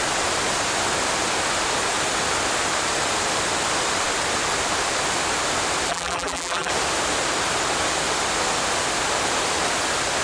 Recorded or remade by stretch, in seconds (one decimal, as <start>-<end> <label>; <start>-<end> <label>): 0.0-5.9 recorded; 5.9-6.7 remade; 6.7-10.2 recorded